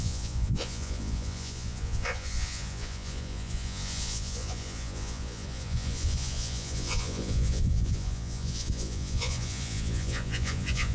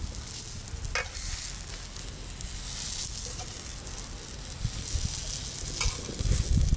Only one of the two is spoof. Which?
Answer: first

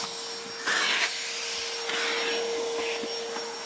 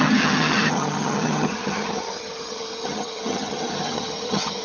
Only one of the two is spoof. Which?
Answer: second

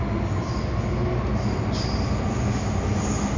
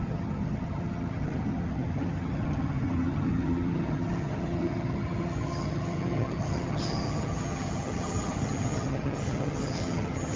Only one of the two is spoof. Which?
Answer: second